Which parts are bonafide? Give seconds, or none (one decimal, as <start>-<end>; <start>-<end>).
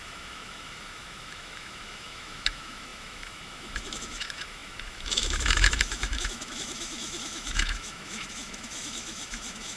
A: none